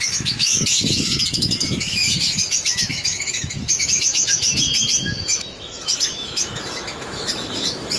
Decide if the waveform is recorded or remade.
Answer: remade